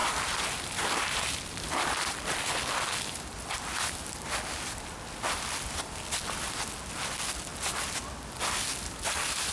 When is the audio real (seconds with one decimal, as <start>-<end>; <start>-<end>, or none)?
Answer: 4.0-9.5